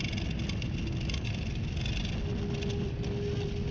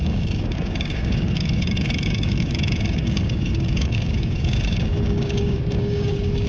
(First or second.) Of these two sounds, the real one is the first